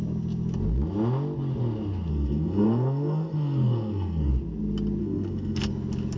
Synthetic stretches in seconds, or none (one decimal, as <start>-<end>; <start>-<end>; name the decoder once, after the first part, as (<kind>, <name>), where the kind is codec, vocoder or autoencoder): 2.1-4.3 (codec, SNAC); 5.0-5.7